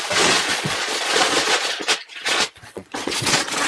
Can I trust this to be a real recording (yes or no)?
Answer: no